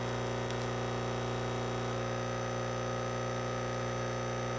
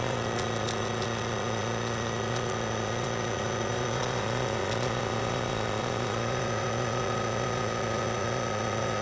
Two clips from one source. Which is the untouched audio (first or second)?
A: first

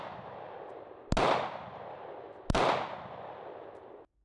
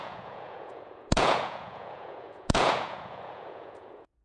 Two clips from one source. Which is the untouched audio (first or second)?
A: first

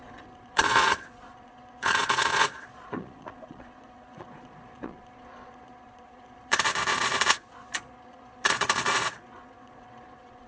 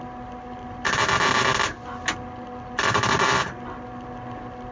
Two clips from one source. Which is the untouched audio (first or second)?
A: second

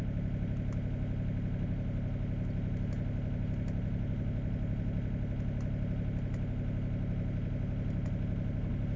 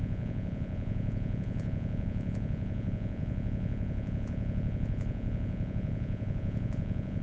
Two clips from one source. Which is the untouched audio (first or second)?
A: first